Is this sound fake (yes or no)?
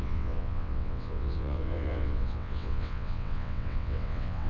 yes